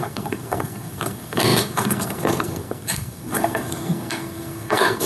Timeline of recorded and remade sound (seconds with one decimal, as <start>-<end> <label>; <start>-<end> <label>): 0.0-5.1 remade

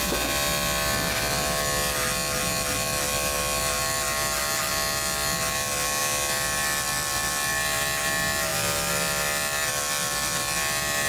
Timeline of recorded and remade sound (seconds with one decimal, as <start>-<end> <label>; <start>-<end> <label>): 0.0-11.1 recorded

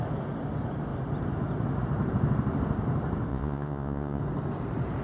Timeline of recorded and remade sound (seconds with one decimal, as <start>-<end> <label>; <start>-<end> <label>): 0.0-3.3 recorded; 3.3-4.2 remade; 4.2-5.0 recorded

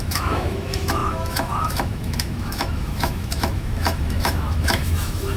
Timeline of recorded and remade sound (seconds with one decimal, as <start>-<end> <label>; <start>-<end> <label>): 0.0-5.4 remade